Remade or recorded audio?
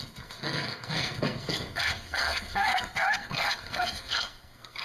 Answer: remade